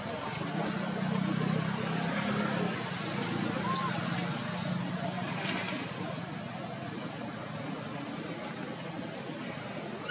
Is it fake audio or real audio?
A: real